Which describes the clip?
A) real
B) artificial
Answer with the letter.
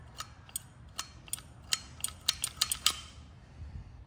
A